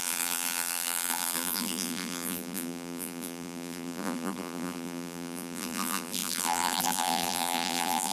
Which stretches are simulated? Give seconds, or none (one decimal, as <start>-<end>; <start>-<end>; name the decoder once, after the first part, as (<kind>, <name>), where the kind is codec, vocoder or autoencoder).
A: 0.0-8.1 (vocoder, BigVGAN v2)